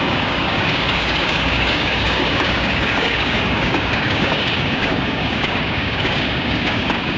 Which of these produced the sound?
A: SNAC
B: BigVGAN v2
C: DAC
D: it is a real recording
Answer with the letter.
C